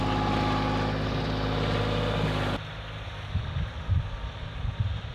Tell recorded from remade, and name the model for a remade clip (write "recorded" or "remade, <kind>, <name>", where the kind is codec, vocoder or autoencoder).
recorded